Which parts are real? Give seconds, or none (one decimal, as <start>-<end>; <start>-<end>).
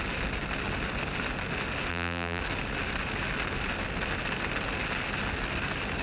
0.0-1.9; 2.4-6.0